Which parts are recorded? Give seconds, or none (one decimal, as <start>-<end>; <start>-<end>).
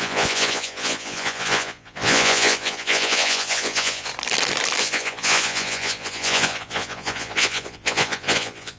4.1-4.8